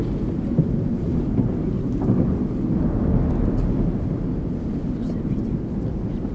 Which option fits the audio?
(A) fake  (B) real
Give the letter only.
B